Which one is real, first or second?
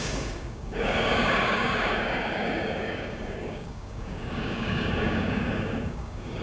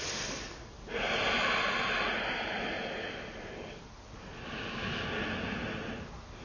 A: second